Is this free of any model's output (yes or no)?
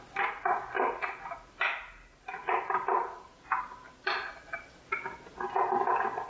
yes